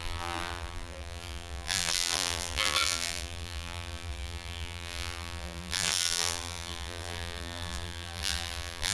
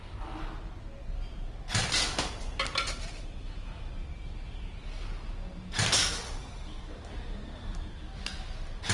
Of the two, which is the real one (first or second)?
second